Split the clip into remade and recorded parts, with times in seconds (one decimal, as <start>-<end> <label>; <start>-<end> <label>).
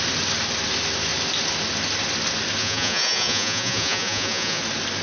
0.0-2.6 recorded; 2.6-4.6 remade; 4.6-5.0 recorded